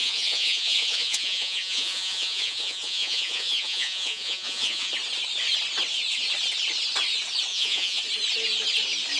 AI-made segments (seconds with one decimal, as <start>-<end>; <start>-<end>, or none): 0.0-4.9; 7.5-8.0